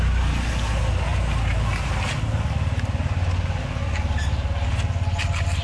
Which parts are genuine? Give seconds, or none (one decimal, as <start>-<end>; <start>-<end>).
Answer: 0.0-5.6